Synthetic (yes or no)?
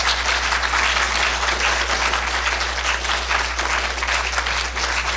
no